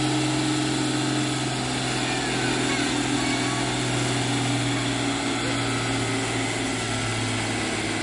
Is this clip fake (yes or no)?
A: no